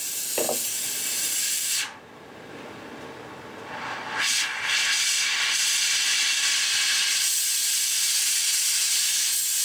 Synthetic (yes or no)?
no